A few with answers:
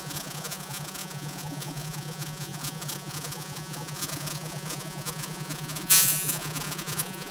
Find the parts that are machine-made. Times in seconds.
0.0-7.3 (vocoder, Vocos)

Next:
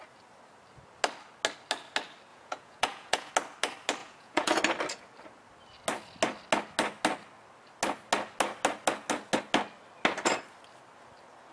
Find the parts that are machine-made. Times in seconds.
2.3-3.3 (vocoder, Vocos); 4.0-4.6

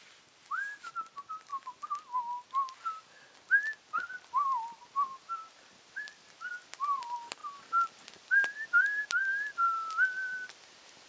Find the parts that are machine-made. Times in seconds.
none

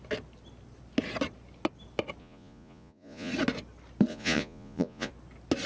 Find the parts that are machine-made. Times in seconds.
2.2-3.3 (vocoder, Vocos); 4.1-5.1

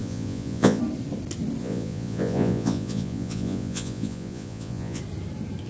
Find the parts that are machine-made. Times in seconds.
0.0-0.8 (vocoder, Vocos); 1.6-5.0

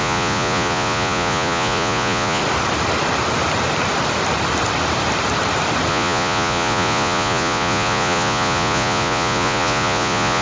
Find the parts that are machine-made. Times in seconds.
0.0-2.4 (vocoder, Vocos); 5.9-10.4

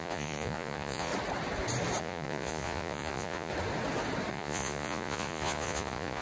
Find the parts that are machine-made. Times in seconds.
0.0-1.1 (vocoder, Vocos); 2.0-3.5; 4.3-6.2

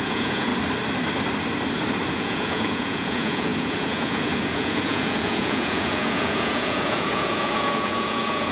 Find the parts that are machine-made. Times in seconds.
0.0-0.5 (vocoder, Vocos); 2.1-8.5